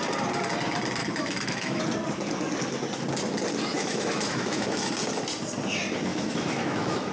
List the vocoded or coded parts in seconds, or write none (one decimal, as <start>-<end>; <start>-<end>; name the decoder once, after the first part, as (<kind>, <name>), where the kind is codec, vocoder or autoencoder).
1.0-1.8 (autoencoder, DAC-VAE); 3.7-4.9; 6.1-7.1